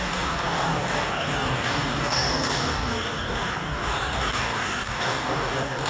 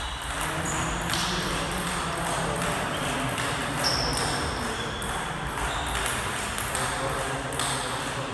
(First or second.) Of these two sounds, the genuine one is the second